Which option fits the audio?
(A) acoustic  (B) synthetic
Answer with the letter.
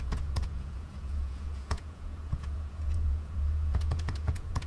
B